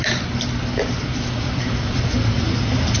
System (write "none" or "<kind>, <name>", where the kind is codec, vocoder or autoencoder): none